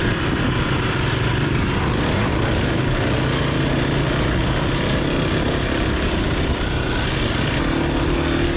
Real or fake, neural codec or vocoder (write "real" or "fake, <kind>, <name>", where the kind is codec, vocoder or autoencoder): real